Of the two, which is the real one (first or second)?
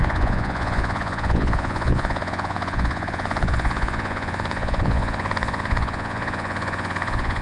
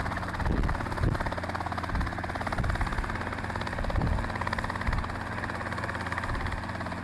second